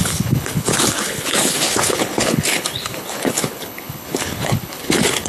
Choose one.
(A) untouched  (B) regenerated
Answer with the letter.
B